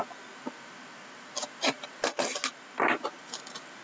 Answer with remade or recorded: recorded